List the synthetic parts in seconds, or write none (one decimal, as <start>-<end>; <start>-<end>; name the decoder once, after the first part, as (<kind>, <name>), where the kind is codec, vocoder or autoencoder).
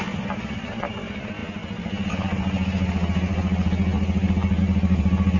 none